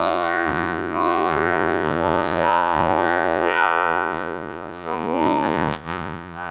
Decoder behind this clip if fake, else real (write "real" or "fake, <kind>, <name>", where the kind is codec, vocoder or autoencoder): fake, vocoder, Vocos